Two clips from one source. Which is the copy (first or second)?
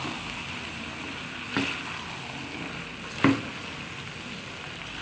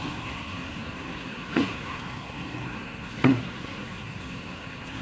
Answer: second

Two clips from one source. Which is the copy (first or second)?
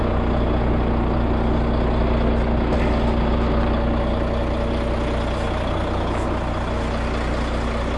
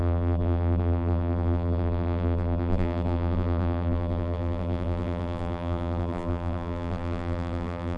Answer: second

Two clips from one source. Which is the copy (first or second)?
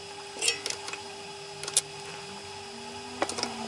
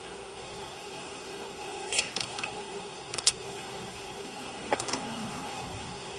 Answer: second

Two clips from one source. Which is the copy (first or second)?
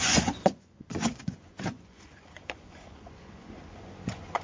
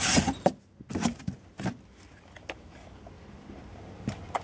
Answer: first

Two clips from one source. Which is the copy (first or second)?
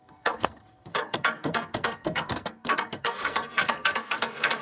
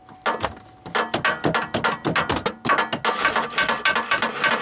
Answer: first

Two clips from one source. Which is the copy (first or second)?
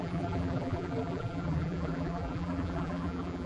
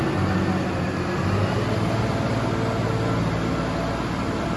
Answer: first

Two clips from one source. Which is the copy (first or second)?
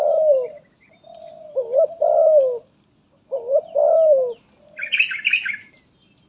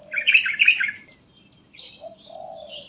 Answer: second